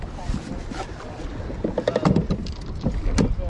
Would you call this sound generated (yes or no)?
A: no